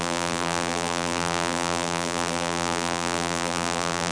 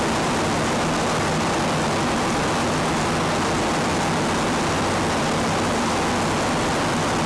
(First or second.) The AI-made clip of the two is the first